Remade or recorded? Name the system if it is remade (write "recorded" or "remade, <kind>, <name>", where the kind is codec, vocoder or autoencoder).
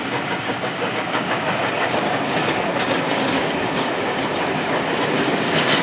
remade, codec, DAC